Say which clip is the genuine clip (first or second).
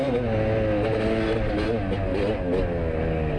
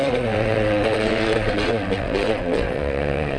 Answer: first